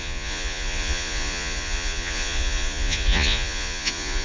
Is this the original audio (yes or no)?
no